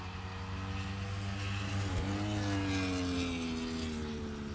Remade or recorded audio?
recorded